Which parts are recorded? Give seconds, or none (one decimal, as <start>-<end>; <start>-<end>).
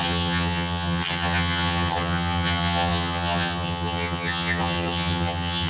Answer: none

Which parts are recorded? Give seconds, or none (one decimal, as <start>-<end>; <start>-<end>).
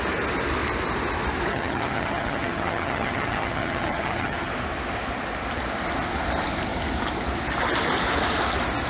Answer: 0.0-1.5; 4.5-8.9